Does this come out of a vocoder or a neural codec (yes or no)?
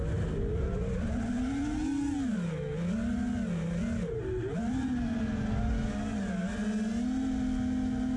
no